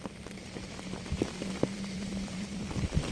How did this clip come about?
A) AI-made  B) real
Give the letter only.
A